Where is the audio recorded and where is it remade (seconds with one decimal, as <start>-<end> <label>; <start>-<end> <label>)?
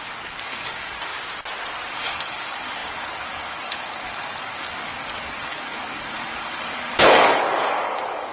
0.0-1.1 remade; 1.1-1.9 recorded; 1.9-8.3 remade